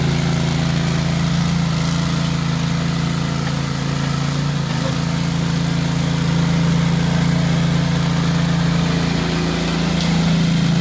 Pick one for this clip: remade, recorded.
recorded